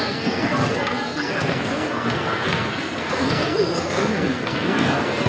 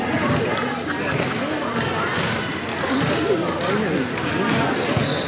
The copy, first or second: first